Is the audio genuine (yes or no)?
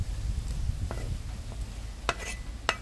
yes